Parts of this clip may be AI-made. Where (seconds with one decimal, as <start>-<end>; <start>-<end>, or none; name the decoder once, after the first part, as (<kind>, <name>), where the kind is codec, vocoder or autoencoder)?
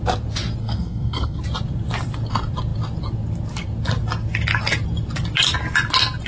0.6-1.4 (codec, SNAC)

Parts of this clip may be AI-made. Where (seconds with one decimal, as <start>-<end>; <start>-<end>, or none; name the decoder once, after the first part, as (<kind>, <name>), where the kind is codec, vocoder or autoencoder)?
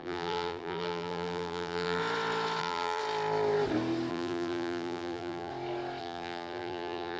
0.0-2.0 (vocoder, BigVGAN v2); 2.6-3.0; 4.1-5.5; 6.0-7.2